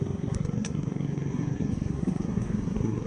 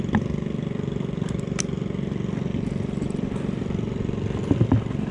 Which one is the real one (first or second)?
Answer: second